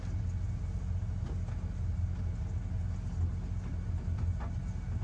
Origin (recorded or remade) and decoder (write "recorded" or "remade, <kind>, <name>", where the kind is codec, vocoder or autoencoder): recorded